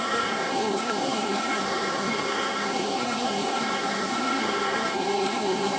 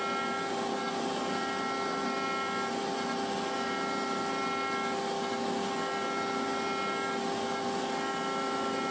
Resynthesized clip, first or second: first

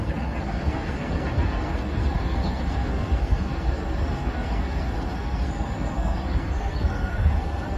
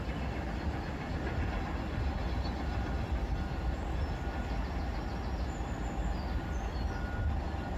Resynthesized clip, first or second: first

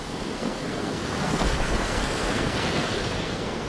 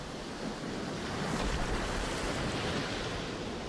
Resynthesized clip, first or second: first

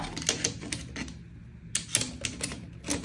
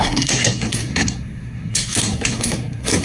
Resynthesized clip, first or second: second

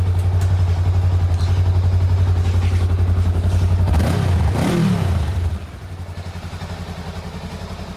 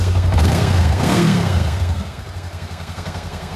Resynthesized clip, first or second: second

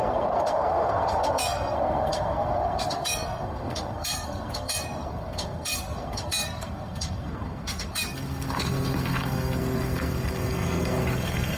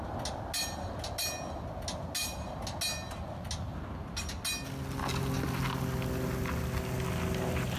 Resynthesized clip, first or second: first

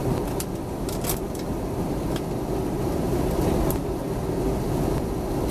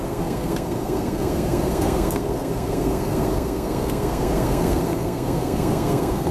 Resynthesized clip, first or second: second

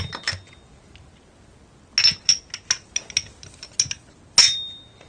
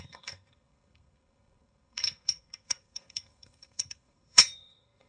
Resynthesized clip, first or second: second